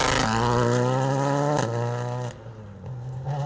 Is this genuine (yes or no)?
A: yes